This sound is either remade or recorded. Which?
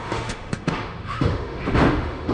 remade